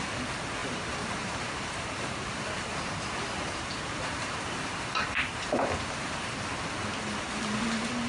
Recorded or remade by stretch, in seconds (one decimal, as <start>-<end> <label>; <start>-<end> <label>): 0.0-0.6 recorded; 0.6-5.5 remade; 5.5-8.1 recorded